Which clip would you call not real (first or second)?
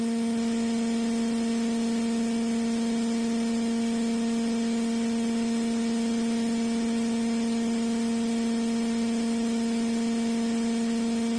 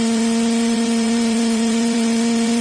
second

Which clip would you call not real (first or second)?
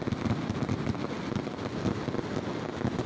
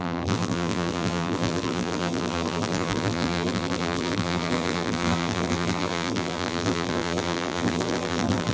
second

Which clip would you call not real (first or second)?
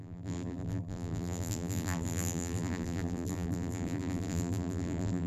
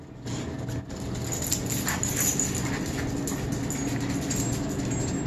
first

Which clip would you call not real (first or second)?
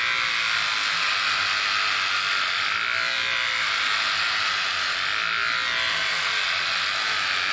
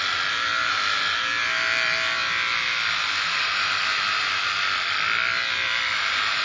second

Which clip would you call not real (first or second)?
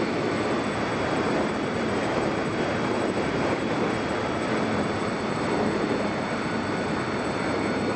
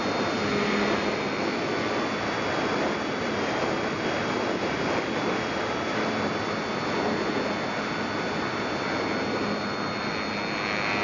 first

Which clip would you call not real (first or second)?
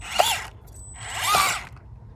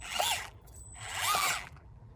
second